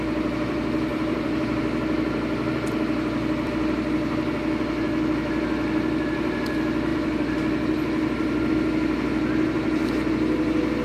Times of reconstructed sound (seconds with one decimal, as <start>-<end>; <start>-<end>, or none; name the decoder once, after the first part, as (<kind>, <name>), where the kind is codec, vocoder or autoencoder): 0.9-1.6 (vocoder, BigVGAN v2); 6.9-8.5